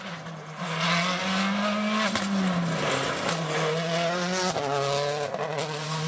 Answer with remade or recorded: recorded